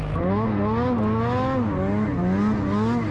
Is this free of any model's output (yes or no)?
yes